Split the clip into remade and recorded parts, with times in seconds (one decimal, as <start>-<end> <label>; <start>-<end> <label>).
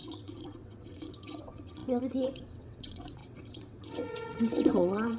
0.0-5.2 remade